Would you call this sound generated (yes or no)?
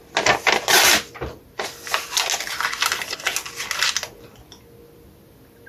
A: no